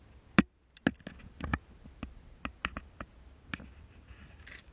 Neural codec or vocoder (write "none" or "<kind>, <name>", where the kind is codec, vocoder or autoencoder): none